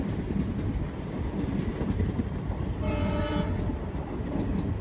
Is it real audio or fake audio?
real